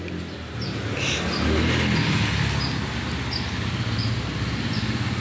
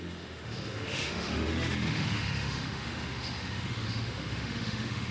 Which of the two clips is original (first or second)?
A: first